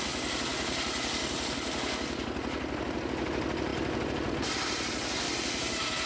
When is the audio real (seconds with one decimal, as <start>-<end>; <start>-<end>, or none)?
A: 0.0-6.1